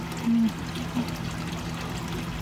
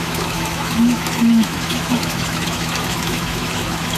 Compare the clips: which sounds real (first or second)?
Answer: first